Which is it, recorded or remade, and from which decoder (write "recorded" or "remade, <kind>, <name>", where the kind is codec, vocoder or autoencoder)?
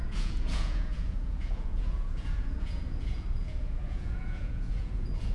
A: remade, vocoder, Vocos